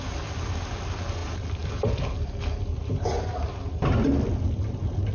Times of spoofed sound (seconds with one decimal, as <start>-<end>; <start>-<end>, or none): none